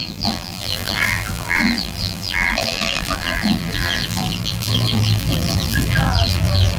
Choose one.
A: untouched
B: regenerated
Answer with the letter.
B